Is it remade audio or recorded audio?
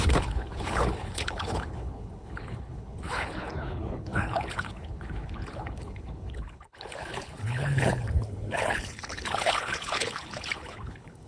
remade